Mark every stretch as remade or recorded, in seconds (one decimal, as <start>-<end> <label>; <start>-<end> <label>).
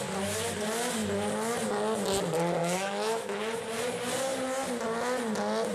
0.0-2.6 recorded; 2.6-3.4 remade; 3.4-5.7 recorded